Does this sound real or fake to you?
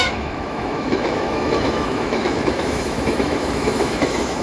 fake